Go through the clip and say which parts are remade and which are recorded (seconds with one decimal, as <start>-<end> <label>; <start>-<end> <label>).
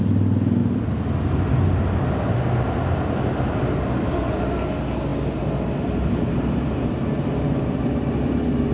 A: 0.0-8.7 recorded